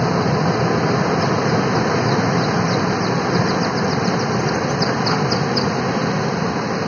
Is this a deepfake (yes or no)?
no